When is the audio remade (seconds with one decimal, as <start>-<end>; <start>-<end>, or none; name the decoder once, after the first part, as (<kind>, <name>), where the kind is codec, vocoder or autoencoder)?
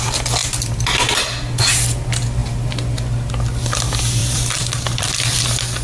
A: 0.4-0.9 (vocoder, BigVGAN v2); 4.2-5.2